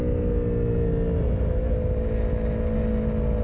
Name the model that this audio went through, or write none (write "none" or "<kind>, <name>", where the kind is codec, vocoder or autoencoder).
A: none